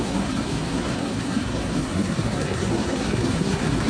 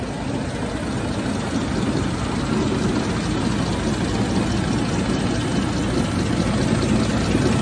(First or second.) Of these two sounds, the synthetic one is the first